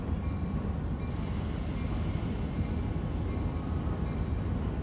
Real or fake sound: real